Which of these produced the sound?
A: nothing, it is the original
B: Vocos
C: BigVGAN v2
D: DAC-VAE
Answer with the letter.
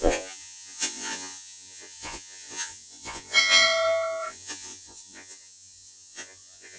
B